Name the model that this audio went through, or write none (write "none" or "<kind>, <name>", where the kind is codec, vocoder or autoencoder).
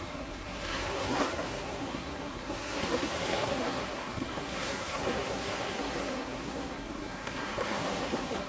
codec, SNAC